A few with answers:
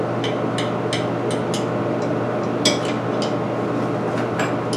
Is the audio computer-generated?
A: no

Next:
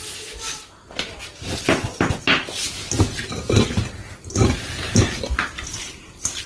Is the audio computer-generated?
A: no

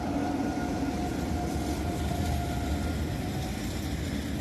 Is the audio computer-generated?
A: no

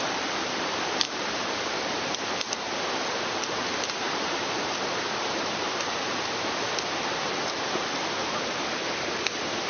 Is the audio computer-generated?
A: yes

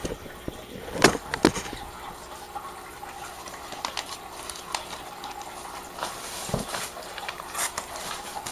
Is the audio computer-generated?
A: no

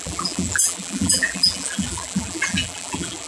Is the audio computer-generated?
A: yes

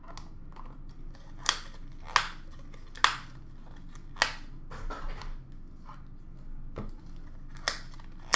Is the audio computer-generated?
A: no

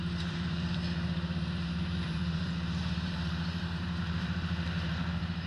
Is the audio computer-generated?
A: yes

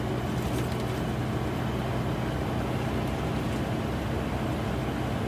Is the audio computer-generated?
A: no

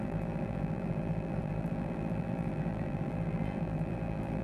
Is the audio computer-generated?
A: yes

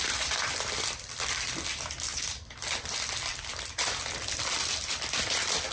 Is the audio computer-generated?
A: yes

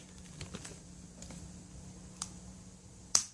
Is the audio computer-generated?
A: yes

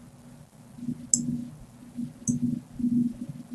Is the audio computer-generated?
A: no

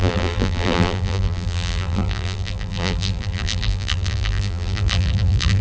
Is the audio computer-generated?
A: yes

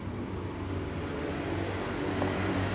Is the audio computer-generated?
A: no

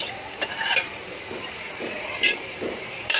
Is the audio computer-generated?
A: yes